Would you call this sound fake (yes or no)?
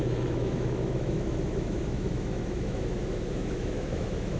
yes